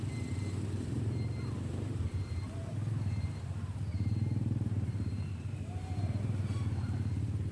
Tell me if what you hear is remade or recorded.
remade